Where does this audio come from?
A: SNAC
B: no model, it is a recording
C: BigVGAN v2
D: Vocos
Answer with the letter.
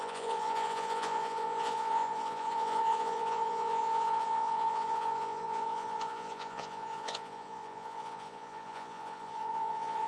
D